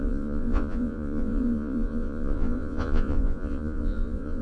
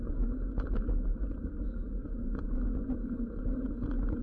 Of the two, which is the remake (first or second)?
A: first